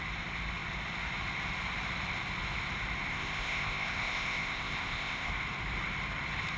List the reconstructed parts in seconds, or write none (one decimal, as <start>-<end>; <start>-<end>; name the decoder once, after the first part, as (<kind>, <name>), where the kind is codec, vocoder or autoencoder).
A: 3.1-5.3 (codec, ZipCodec)